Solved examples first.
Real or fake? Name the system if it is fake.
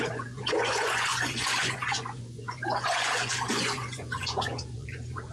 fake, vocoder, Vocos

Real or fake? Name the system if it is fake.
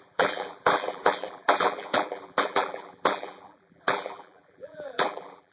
fake, vocoder, BigVGAN v2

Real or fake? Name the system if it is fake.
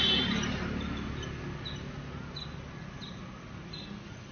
real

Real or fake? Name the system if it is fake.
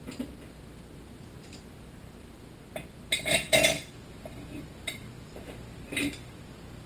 fake, vocoder, BigVGAN v2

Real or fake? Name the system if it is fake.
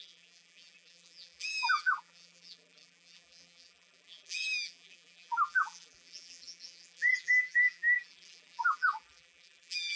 fake, vocoder, BigVGAN v2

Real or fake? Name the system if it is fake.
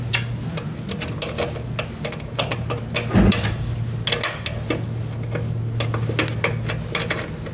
real